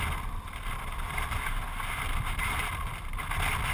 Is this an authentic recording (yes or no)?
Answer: yes